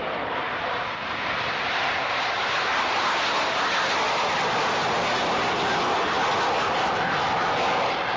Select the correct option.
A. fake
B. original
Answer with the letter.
B